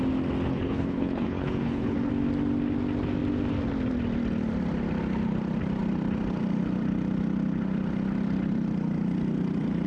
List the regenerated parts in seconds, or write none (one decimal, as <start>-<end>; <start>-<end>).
0.5-2.1